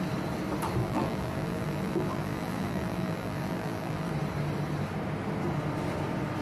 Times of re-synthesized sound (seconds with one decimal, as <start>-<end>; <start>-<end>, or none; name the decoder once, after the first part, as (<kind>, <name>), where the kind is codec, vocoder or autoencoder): 0.8-4.1 (vocoder, BigVGAN v2)